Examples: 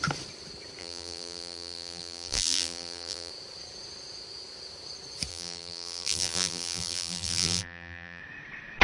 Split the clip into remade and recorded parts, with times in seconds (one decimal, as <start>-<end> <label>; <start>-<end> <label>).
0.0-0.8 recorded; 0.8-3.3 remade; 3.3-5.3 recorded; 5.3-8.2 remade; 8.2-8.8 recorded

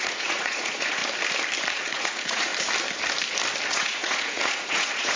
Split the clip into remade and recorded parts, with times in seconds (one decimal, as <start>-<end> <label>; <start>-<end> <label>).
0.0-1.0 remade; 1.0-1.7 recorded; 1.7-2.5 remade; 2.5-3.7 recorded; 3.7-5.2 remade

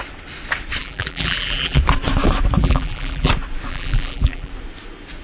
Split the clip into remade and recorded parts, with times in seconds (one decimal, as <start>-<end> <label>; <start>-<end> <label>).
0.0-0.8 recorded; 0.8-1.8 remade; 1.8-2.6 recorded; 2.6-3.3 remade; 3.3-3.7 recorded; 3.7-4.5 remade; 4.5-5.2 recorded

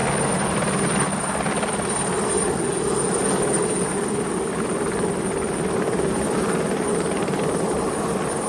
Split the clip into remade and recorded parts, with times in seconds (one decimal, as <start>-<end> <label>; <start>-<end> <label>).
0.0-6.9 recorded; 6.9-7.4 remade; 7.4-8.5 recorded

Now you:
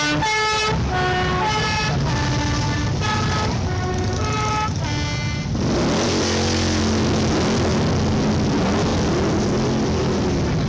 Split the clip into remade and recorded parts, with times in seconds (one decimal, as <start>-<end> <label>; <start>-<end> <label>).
0.0-10.7 recorded

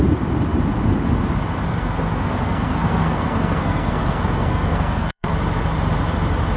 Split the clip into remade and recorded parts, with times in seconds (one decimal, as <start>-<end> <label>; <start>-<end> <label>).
0.0-1.7 recorded; 1.7-5.3 remade; 5.3-6.6 recorded